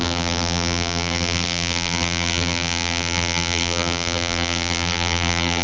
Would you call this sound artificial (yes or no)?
yes